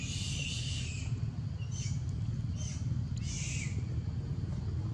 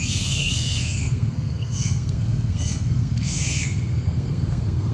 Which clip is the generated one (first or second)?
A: second